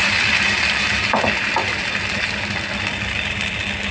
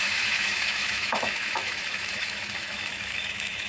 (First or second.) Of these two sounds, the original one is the first